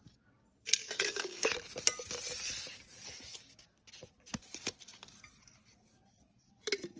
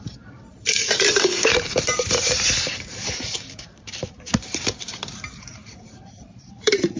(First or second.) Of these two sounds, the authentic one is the first